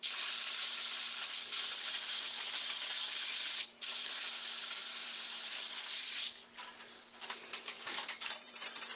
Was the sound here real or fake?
fake